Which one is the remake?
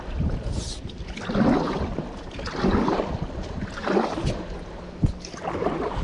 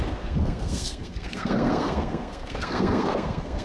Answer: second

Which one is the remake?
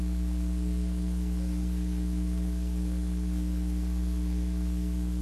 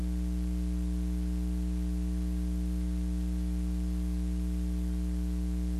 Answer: first